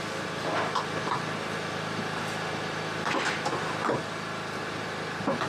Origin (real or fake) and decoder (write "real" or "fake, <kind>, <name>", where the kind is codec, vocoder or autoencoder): real